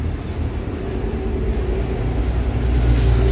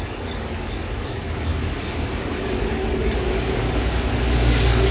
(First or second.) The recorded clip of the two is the first